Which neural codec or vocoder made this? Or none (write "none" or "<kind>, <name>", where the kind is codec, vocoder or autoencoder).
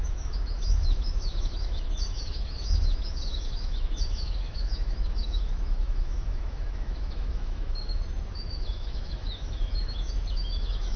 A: autoencoder, DAC-VAE